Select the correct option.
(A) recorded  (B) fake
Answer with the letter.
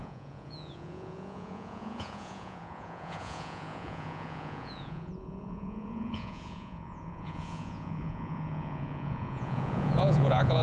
B